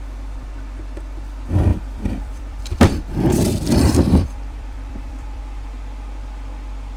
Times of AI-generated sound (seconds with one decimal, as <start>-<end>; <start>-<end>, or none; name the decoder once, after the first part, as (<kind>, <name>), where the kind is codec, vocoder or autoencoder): 1.7-5.4 (vocoder, BigVGAN v2)